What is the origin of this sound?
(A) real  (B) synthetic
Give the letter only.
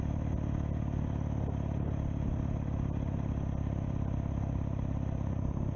A